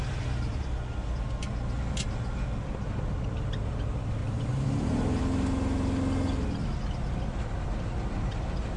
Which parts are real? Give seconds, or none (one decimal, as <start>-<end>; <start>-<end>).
0.0-4.2; 5.2-8.8